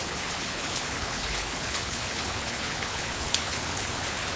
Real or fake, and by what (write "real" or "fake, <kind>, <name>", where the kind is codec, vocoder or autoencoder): fake, codec, HILCodec